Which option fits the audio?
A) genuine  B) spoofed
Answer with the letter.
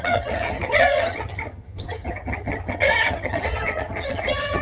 B